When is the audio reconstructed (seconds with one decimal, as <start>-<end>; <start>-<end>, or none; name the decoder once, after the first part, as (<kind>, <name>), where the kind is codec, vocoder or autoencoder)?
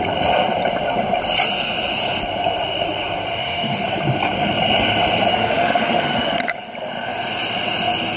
3.3-3.8 (autoencoder, DAC-VAE); 5.3-6.4